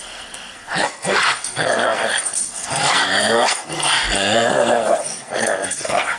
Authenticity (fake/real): fake